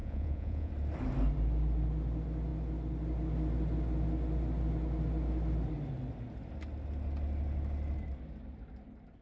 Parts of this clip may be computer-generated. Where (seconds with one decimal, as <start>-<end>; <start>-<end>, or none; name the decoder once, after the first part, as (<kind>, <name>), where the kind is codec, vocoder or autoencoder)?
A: 0.0-0.7 (vocoder, Vocos)